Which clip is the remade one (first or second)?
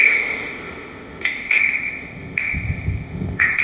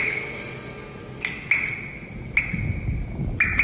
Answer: first